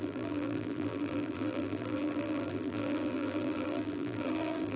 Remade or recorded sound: remade